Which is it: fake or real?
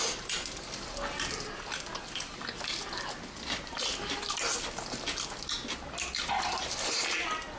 real